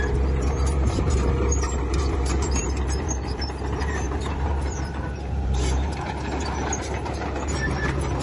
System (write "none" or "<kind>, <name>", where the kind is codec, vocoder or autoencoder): vocoder, BigVGAN v2